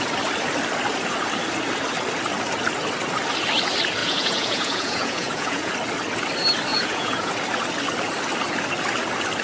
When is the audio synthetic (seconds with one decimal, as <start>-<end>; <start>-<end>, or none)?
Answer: 4.0-5.7; 6.7-7.3